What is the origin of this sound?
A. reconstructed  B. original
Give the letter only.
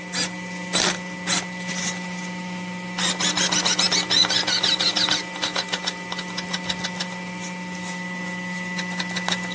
B